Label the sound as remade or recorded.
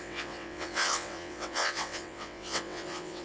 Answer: remade